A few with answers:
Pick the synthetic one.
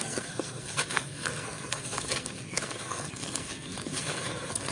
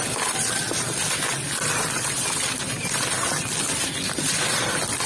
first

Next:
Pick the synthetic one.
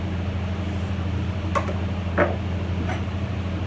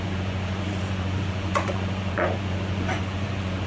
second